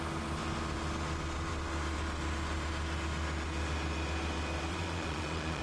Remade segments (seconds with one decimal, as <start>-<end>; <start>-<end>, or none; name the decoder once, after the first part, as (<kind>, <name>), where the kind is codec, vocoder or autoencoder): 4.7-5.6 (vocoder, Vocos)